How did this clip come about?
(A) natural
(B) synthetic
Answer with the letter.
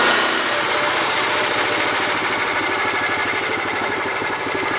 B